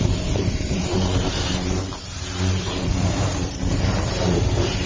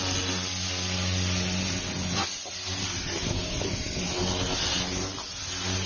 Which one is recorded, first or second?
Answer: second